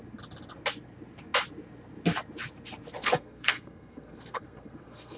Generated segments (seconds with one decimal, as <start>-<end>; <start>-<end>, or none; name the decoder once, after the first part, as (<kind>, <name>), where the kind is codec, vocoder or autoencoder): 3.0-5.2 (codec, SNAC)